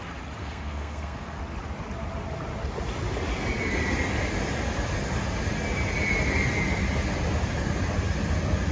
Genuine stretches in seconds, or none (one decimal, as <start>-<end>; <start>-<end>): 0.0-0.4; 1.4-8.7